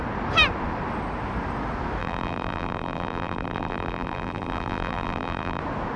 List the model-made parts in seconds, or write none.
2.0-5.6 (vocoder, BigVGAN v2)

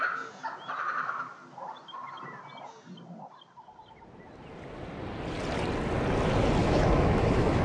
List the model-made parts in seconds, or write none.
6.6-7.6 (autoencoder, DAC-VAE)

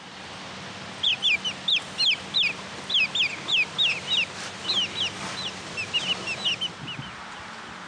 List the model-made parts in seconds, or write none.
none

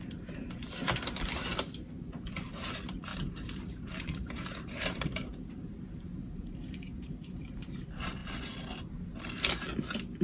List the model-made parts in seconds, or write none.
3.1-6.7 (vocoder, BigVGAN v2)